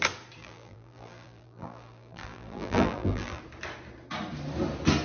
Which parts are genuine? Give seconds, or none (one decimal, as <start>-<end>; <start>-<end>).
0.0-0.4; 3.4-5.0